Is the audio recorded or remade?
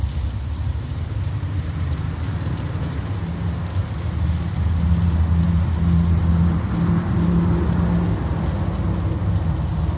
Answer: recorded